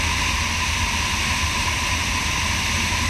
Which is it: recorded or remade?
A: recorded